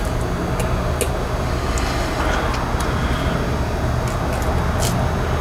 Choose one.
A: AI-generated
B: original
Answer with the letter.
B